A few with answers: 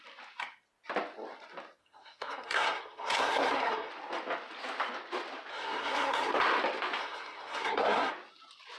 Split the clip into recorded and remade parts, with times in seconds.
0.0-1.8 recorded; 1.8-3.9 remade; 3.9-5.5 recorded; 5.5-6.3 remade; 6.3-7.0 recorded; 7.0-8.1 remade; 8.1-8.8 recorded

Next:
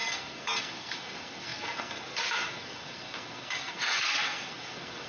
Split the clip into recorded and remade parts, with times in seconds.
0.0-5.1 remade

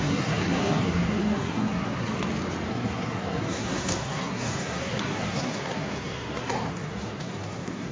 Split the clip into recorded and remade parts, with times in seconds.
0.0-2.1 remade; 2.1-2.7 recorded; 2.7-7.9 remade

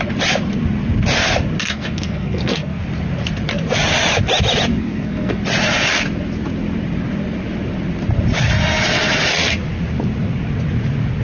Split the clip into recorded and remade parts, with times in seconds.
0.0-1.6 recorded; 1.6-2.8 remade; 2.8-4.7 recorded; 4.7-5.4 remade; 5.4-11.2 recorded

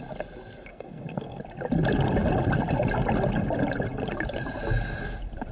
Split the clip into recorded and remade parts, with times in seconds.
0.0-0.7 recorded; 0.7-1.4 remade; 1.4-5.5 recorded

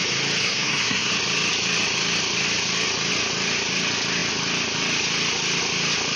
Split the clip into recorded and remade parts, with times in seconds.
0.0-0.4 recorded; 0.4-1.1 remade; 1.1-6.2 recorded

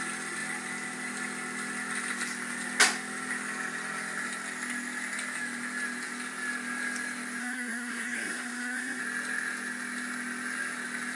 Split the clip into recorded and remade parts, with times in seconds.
0.0-7.4 recorded; 7.4-9.0 remade; 9.0-11.2 recorded

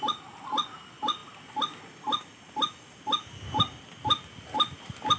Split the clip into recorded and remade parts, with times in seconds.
0.0-5.2 recorded